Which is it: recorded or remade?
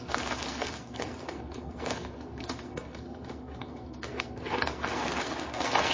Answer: remade